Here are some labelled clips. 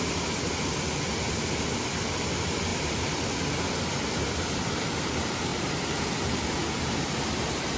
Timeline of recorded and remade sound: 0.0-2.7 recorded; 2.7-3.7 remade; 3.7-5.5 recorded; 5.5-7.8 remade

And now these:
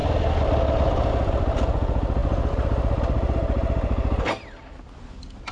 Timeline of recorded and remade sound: 0.0-5.5 recorded

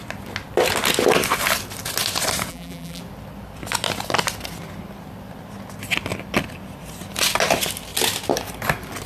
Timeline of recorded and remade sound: 0.0-2.5 recorded; 2.5-3.0 remade; 3.0-9.1 recorded

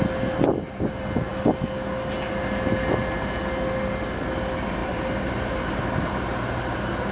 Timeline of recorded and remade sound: 0.0-4.8 recorded; 4.8-5.5 remade; 5.5-7.1 recorded